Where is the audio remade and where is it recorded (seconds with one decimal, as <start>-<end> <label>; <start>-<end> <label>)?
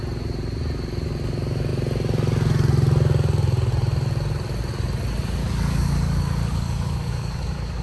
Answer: 0.0-5.4 recorded; 5.4-7.8 remade